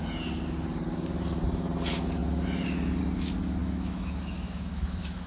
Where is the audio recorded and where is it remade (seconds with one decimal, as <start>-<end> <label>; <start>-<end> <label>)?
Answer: 0.0-3.6 recorded; 3.6-5.3 remade